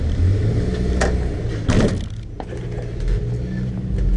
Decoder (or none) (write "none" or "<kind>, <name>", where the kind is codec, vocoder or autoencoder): none